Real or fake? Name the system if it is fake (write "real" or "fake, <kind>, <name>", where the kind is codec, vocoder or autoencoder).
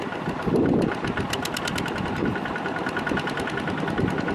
real